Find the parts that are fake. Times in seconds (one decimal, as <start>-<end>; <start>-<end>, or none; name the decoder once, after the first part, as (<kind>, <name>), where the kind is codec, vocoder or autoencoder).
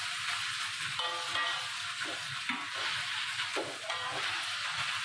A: none